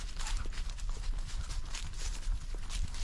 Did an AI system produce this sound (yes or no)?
no